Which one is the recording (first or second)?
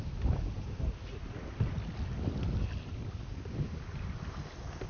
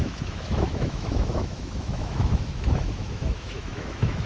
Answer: first